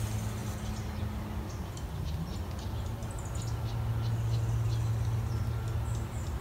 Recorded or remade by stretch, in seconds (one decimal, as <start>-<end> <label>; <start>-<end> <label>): 0.0-6.4 recorded